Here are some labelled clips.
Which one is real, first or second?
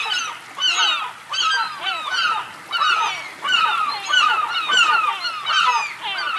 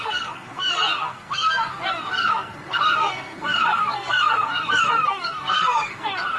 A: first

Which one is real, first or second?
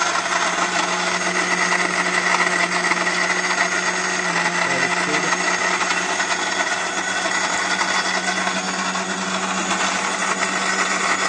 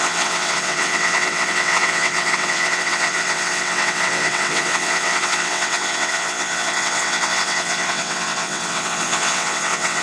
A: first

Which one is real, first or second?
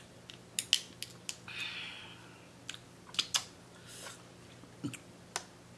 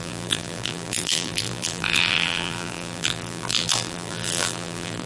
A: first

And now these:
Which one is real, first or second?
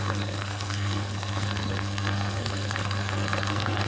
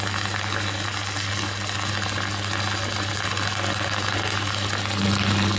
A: second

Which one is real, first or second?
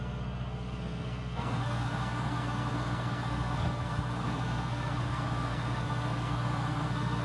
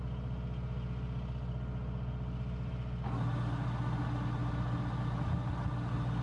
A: second